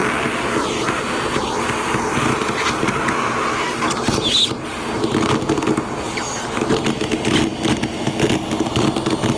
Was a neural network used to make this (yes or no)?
no